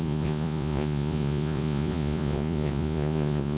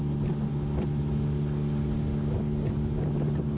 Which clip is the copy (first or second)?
first